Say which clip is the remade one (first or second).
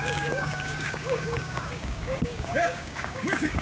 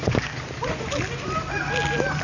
first